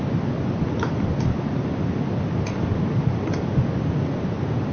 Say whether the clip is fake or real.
real